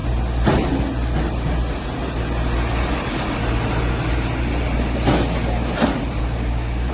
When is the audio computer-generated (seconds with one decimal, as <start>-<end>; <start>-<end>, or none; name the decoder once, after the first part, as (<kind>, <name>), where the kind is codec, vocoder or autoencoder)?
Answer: 6.2-6.9 (codec, DAC)